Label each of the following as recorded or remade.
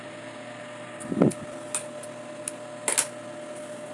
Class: recorded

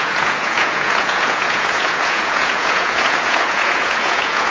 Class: remade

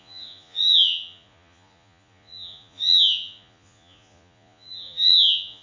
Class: remade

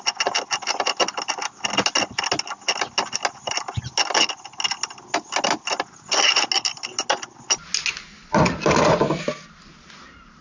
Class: recorded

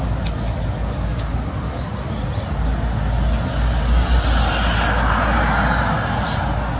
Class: recorded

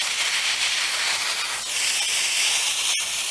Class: recorded